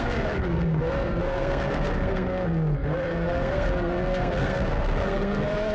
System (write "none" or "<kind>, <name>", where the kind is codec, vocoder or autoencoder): codec, SNAC